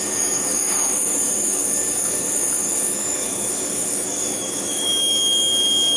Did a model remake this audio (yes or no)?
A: yes